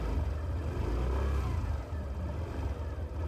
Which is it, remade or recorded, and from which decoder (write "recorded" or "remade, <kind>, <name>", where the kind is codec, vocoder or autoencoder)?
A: recorded